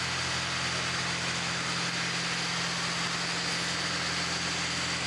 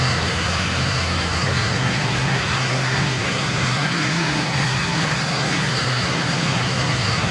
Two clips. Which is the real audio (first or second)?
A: first